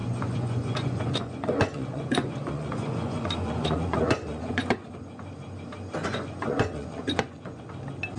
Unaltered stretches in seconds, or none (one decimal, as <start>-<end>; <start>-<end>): 4.9-6.0; 7.7-8.2